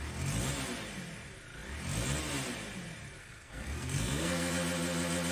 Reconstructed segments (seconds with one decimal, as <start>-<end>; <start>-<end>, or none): 3.2-4.5